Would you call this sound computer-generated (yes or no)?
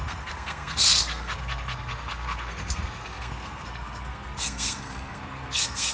yes